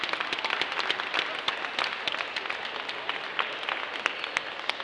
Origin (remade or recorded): recorded